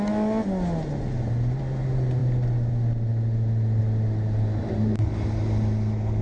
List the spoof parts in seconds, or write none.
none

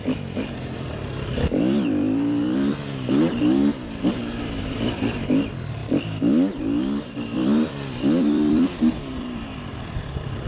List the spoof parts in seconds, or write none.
0.0-5.8 (vocoder, BigVGAN v2); 7.0-10.5